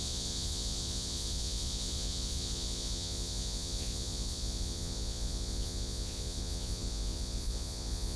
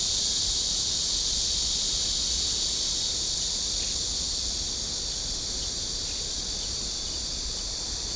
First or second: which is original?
second